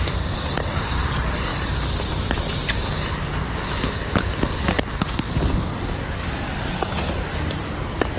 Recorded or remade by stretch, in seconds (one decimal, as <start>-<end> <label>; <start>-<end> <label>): 0.0-8.2 recorded